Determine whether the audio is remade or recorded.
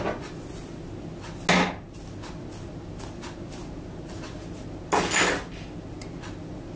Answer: recorded